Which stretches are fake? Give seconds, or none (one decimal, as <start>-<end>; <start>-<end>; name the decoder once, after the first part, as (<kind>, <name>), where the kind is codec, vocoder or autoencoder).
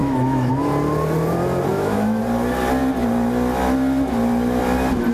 0.0-0.5 (autoencoder, DAC-VAE); 1.7-2.2